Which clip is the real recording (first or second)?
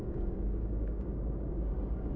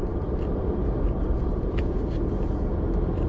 second